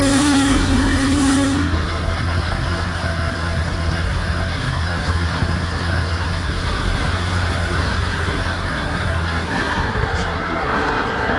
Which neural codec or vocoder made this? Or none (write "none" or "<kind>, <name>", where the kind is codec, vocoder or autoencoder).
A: codec, SNAC